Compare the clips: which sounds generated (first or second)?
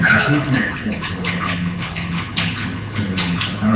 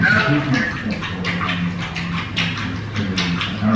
first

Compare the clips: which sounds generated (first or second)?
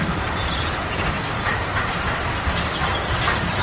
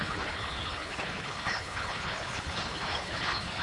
second